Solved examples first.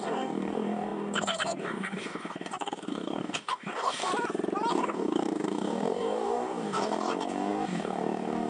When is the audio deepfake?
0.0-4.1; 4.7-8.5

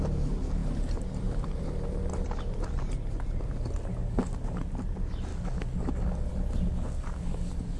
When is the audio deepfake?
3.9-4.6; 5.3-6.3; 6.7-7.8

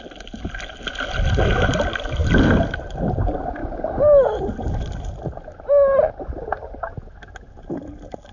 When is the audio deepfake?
none

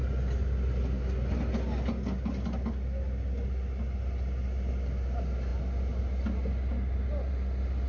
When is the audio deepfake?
none